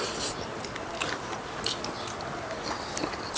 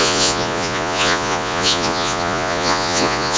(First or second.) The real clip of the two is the first